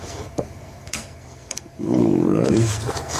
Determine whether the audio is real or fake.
fake